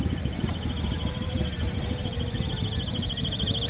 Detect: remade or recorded recorded